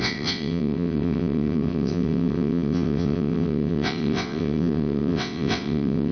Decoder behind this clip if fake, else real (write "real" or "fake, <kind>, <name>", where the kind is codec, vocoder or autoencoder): fake, vocoder, WaveNeXt